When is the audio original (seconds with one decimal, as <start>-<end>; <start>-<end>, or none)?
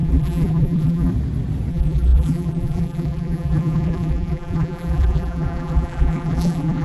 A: 1.1-1.7